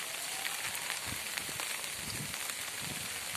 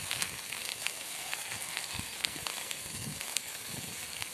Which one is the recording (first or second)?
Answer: first